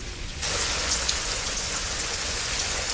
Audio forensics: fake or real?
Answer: fake